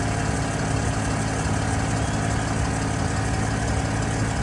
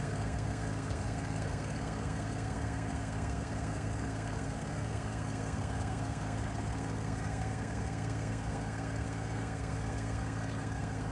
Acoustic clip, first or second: first